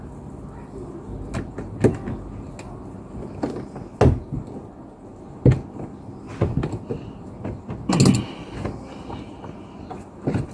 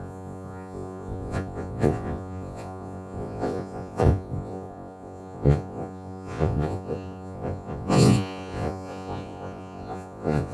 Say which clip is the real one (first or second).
first